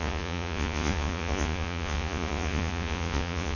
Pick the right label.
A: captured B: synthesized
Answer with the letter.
B